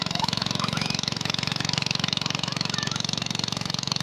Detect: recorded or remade remade